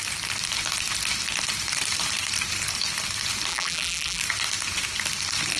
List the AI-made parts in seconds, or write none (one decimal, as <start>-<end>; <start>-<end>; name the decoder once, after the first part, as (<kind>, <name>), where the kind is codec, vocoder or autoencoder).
3.5-4.2 (vocoder, BigVGAN v2)